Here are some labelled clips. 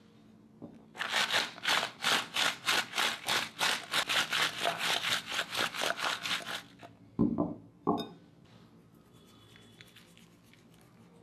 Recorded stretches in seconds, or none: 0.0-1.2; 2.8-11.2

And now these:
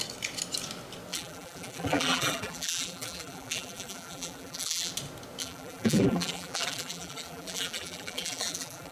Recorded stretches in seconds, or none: 0.0-1.1; 4.9-5.4

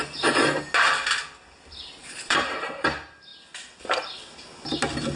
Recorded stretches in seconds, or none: 0.0-2.0; 2.8-5.2

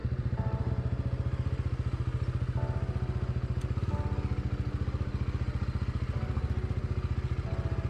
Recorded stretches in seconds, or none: 0.7-7.9

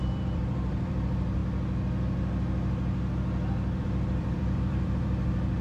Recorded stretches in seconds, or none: 1.4-3.8

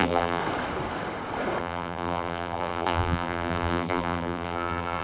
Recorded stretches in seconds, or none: 0.4-1.6

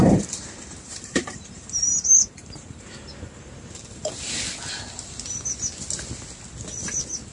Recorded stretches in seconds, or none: 4.4-7.3

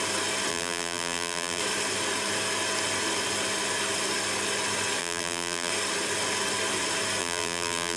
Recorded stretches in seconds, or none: 0.0-0.5; 1.6-5.0; 5.7-7.2